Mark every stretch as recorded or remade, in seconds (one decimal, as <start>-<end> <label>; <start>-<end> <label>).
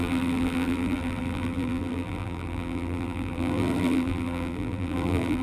0.0-5.4 remade